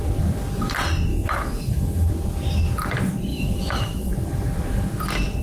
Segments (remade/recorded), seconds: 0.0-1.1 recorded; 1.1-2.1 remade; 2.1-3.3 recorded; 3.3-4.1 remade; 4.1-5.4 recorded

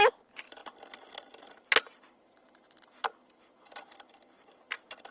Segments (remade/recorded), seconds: 0.0-5.1 recorded

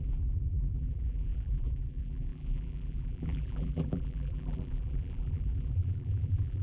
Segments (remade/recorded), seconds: 0.0-6.6 remade

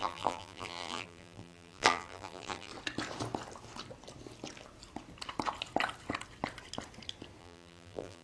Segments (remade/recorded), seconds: 0.0-2.7 remade; 2.7-7.4 recorded; 7.4-8.2 remade

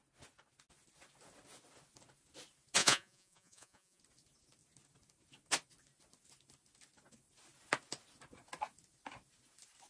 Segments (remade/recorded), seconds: 0.0-2.8 recorded; 2.8-4.0 remade; 4.0-9.9 recorded

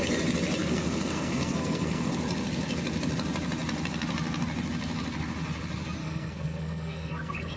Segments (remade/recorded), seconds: 0.0-0.6 recorded; 0.6-2.1 remade; 2.1-6.0 recorded; 6.0-7.6 remade

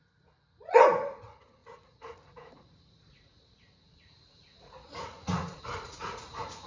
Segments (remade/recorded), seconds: 0.0-6.7 remade